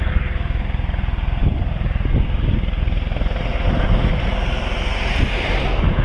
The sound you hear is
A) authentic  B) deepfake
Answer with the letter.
A